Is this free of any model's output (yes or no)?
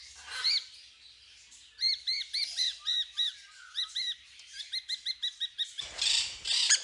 yes